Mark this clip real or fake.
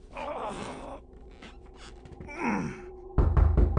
fake